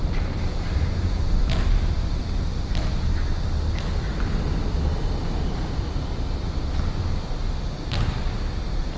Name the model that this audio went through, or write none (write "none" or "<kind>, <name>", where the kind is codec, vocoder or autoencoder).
none